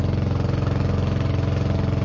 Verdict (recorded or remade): recorded